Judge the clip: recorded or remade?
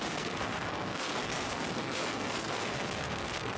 remade